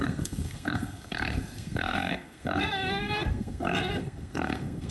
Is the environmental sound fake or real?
fake